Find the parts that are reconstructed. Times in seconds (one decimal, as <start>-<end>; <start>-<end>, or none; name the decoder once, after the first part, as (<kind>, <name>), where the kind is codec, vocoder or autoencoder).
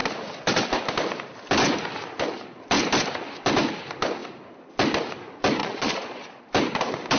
5.6-6.4 (vocoder, Vocos)